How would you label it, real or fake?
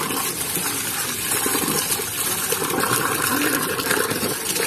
real